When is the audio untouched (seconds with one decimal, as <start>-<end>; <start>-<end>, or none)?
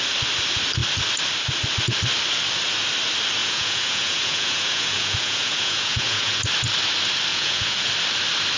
0.0-3.4; 6.4-7.3; 7.9-8.6